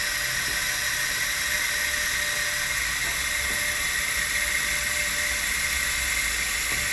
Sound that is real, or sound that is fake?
real